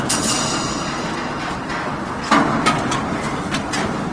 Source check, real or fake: real